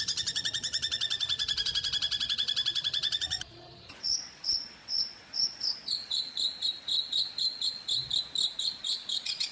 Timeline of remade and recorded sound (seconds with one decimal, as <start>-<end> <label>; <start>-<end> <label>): 0.0-8.0 remade; 8.0-8.6 recorded; 8.6-9.5 remade

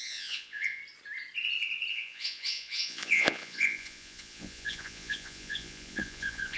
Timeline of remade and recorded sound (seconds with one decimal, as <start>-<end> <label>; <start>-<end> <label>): 0.0-0.8 remade; 0.8-1.9 recorded; 1.9-6.6 remade

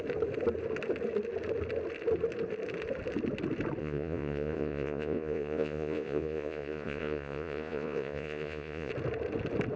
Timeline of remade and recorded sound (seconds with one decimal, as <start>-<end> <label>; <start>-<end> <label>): 0.0-3.8 recorded; 3.8-8.9 remade; 8.9-9.8 recorded

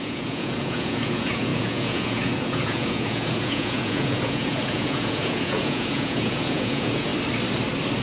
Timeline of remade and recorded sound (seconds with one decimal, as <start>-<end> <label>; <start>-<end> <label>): 0.0-7.1 remade; 7.1-8.0 recorded

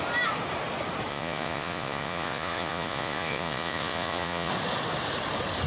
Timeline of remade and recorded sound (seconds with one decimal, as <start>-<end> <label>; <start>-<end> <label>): 0.0-1.1 recorded; 1.1-4.5 remade; 4.5-5.7 recorded

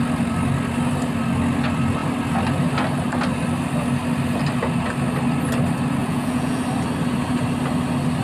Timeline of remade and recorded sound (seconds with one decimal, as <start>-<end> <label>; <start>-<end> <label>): 0.0-6.0 recorded; 6.0-6.6 remade; 6.6-8.2 recorded